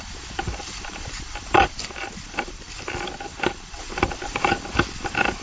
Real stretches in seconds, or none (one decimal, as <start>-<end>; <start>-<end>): none

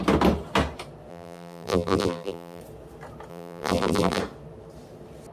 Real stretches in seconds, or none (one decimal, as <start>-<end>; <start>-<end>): 0.0-1.1; 2.6-3.3; 4.2-5.3

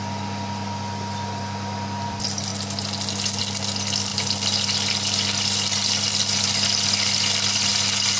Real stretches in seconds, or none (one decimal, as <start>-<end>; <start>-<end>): 2.5-3.4

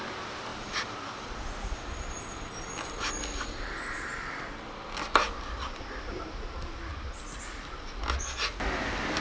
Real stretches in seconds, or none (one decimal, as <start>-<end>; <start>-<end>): 0.0-6.9; 7.4-9.2

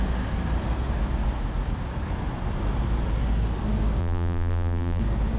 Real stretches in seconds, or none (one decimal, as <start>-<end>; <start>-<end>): 0.0-4.0; 5.0-5.4

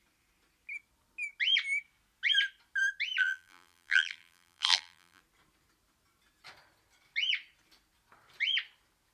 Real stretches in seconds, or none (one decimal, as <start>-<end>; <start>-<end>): 0.0-3.2; 5.2-9.1

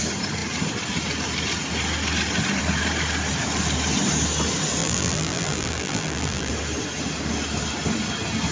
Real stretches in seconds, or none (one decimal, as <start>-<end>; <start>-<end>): 0.0-4.8; 6.5-8.5

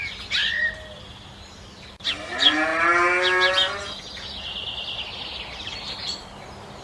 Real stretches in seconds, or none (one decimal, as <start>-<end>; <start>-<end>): 0.0-6.8